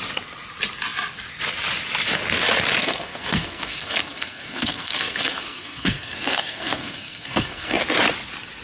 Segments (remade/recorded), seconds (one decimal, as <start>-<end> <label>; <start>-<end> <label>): 0.0-2.8 recorded; 2.8-7.8 remade; 7.8-8.6 recorded